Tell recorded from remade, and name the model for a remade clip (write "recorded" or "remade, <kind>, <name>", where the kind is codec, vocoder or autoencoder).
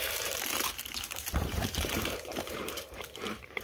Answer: remade, vocoder, BigVGAN v2